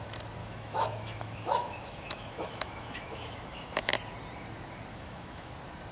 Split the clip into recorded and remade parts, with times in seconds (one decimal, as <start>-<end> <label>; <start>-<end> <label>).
0.0-0.4 recorded; 0.4-3.9 remade; 3.9-4.9 recorded; 4.9-5.5 remade; 5.5-5.9 recorded